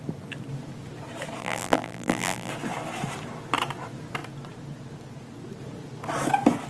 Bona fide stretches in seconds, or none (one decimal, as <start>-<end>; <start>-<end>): 0.0-1.4; 2.5-6.7